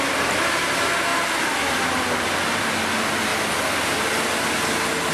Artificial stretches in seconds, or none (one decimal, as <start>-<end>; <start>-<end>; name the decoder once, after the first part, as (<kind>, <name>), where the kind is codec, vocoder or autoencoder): none